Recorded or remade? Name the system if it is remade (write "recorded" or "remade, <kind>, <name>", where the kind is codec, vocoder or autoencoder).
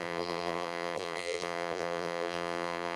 remade, vocoder, BigVGAN v2